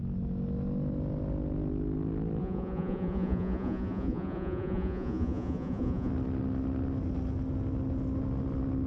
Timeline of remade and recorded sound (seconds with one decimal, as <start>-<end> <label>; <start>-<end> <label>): 0.0-2.4 recorded; 2.4-6.1 remade; 6.1-8.9 recorded